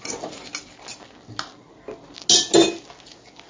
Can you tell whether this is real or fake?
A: real